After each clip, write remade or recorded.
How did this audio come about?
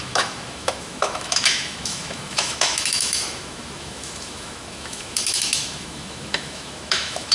remade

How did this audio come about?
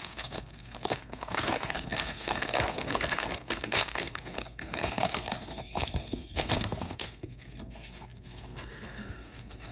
remade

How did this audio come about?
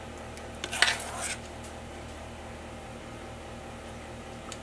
recorded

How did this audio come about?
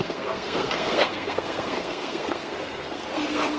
remade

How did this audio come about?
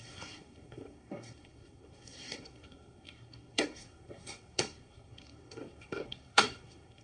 remade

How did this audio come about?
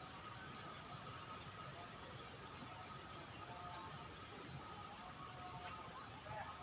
recorded